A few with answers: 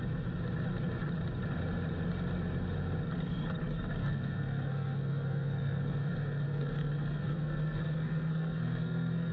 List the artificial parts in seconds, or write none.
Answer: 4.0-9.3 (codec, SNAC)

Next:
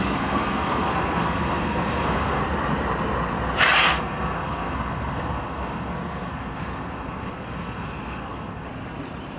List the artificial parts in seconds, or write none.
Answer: 0.0-2.4 (codec, SNAC); 3.9-8.7